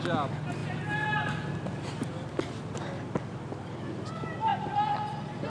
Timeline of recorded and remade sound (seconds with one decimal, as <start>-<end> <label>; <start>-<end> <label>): 0.0-5.5 recorded